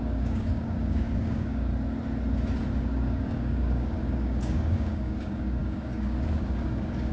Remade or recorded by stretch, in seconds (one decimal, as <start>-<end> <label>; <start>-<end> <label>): 0.0-1.7 remade; 1.7-2.8 recorded; 2.8-7.1 remade